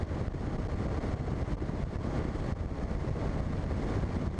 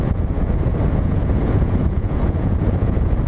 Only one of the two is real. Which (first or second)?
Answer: first